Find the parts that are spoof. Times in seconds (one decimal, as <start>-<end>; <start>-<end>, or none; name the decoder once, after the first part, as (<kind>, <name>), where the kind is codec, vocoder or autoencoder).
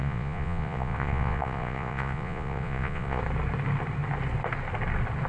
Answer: 0.0-3.2 (vocoder, Vocos)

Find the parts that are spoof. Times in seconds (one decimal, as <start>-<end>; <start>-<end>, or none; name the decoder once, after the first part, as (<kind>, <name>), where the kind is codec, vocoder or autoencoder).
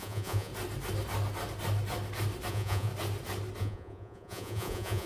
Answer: 0.0-0.5 (vocoder, Vocos); 2.5-2.9; 3.6-5.1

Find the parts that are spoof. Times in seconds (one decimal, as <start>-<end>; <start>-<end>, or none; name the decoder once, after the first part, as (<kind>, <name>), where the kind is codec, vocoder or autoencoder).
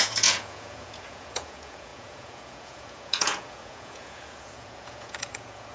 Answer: 0.0-5.7 (vocoder, Vocos)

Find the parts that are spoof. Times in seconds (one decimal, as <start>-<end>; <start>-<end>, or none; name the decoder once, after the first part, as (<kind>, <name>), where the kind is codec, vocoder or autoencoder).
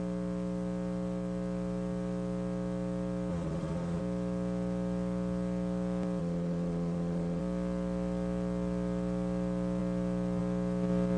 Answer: 3.3-4.0 (vocoder, Vocos); 6.2-7.4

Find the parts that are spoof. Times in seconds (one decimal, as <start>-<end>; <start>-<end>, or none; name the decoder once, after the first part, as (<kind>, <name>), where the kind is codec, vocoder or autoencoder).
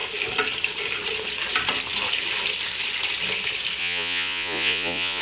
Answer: 3.8-5.2 (vocoder, Vocos)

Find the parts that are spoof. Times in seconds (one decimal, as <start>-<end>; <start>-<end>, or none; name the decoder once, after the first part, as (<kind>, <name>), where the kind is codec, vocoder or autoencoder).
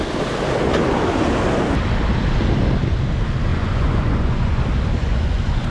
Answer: 3.5-4.6 (vocoder, Vocos); 5.0-5.7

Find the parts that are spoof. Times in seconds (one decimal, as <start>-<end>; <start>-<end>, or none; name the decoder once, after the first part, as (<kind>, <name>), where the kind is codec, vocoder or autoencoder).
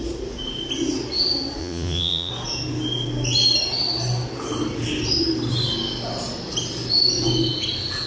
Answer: 1.6-2.3 (vocoder, Vocos)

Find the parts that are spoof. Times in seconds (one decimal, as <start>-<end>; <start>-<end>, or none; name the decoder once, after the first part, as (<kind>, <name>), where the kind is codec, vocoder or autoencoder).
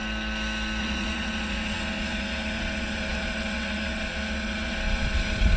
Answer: 0.8-5.6 (vocoder, Vocos)